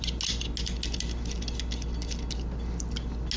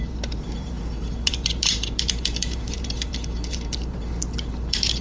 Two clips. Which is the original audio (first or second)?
first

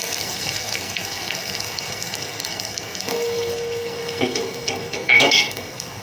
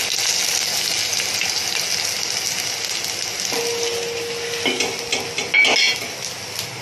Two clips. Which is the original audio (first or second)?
second